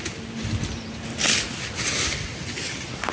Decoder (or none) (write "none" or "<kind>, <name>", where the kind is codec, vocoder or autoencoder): none